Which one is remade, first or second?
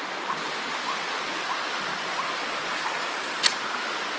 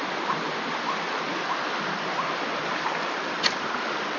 second